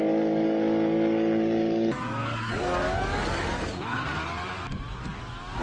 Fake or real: fake